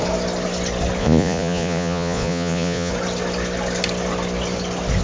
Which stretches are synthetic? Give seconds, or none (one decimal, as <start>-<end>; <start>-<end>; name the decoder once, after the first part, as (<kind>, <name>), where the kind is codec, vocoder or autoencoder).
1.0-2.9 (vocoder, Vocos)

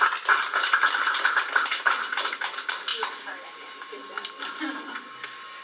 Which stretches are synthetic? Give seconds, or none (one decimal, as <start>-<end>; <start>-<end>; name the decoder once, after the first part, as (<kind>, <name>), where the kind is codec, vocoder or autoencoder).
none

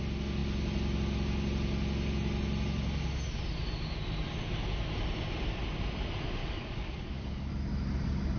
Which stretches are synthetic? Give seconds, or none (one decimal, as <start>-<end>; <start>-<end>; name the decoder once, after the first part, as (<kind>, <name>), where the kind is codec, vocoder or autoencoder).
6.4-7.5 (codec, DAC)

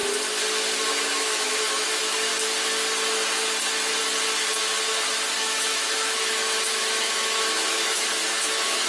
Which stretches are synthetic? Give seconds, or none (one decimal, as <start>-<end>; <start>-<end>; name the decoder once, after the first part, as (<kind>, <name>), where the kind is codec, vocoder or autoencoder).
0.9-2.3 (autoencoder, DAC-VAE); 5.4-8.9

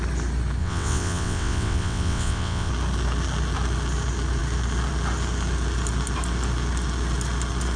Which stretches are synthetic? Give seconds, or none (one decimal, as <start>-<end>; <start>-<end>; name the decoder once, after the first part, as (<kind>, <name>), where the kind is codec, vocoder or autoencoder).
0.6-2.7 (vocoder, WaveNeXt)

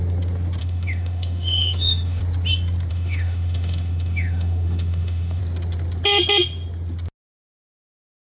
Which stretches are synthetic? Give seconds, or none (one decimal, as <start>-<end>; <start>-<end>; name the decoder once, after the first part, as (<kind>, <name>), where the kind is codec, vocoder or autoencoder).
0.6-2.2 (autoencoder, DAC-VAE); 2.9-5.4

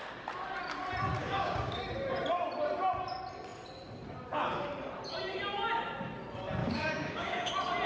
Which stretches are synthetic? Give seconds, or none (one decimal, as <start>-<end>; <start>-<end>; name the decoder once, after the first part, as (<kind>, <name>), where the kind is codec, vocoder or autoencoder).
1.2-1.8 (codec, DAC); 6.6-7.5